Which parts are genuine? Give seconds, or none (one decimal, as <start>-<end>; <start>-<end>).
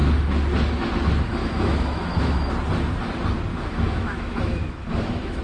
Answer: 0.0-1.4; 2.5-3.5